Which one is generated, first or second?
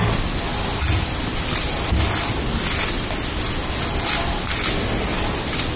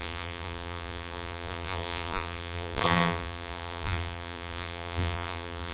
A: second